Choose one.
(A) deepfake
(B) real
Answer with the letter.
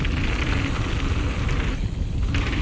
B